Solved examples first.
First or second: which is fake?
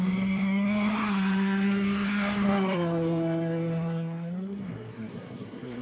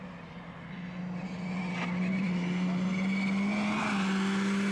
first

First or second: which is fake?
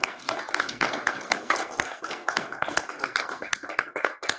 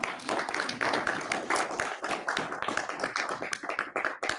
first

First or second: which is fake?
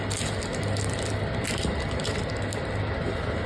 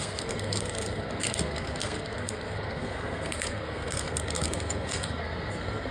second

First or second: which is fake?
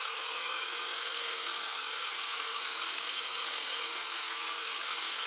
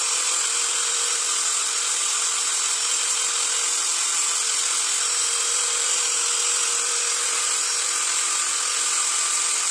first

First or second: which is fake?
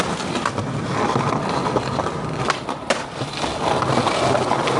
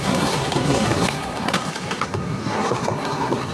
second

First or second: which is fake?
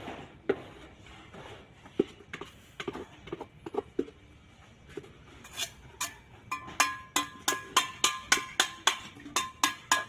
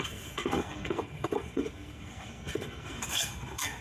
second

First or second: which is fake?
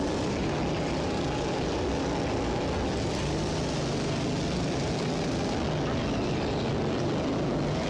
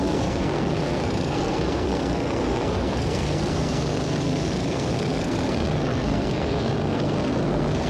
second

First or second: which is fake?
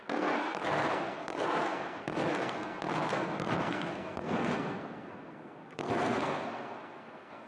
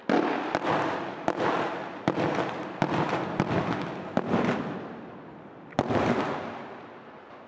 first